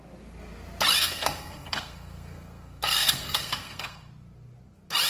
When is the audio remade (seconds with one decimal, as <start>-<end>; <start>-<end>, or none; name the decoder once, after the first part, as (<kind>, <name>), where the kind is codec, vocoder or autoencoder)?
1.0-4.1 (codec, SNAC)